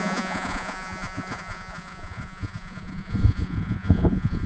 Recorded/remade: remade